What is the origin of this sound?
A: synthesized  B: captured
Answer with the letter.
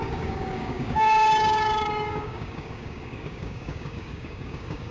A